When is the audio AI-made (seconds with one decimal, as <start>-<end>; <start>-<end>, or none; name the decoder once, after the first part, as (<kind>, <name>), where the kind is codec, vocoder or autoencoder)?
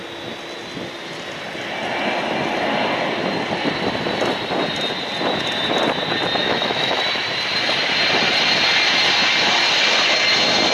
6.4-7.0 (autoencoder, DAC-VAE)